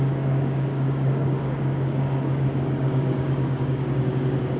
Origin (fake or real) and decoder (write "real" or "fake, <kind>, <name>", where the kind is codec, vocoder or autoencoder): fake, codec, DAC